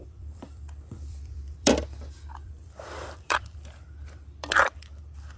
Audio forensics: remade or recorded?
remade